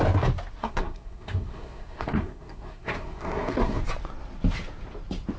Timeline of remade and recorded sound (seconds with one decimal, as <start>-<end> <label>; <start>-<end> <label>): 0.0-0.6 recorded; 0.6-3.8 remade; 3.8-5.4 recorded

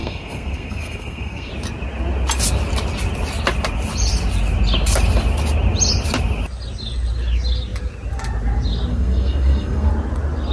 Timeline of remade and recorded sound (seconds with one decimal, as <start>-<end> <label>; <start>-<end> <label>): 0.0-1.5 remade; 1.5-8.9 recorded; 8.9-9.9 remade; 9.9-10.5 recorded

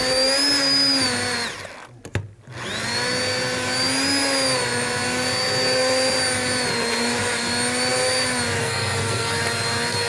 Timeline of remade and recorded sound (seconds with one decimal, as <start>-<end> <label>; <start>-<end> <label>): 0.0-8.6 recorded; 8.6-9.4 remade; 9.4-10.1 recorded

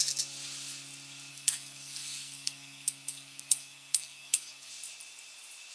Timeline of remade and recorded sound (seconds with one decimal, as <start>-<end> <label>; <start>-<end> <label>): 0.0-1.3 recorded; 1.3-4.7 remade; 4.7-5.7 recorded